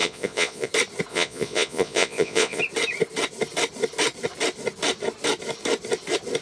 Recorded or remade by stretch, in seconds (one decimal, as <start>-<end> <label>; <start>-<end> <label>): 0.0-0.7 remade; 0.7-1.1 recorded; 1.1-2.6 remade; 2.6-6.4 recorded